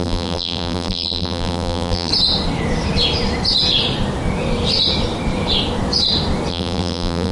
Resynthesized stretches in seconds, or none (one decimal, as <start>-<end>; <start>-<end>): 0.0-2.1; 6.5-7.3